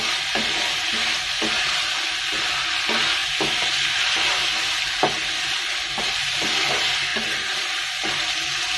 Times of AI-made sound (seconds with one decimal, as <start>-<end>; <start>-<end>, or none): none